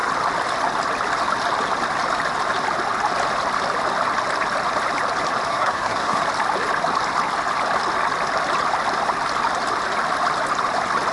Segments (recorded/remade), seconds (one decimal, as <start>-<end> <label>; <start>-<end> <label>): 0.0-5.5 recorded; 5.5-6.2 remade; 6.2-11.1 recorded